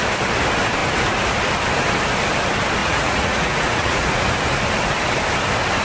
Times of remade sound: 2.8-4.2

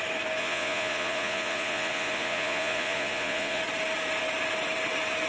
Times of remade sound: 0.4-3.6